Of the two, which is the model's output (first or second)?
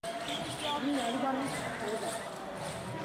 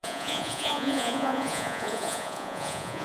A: second